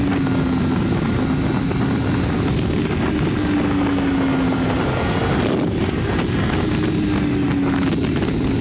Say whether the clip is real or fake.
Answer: real